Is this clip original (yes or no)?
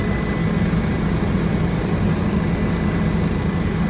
yes